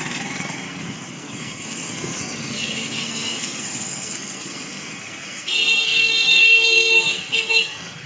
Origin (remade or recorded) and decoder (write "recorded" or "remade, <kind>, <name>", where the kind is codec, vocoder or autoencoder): remade, codec, SNAC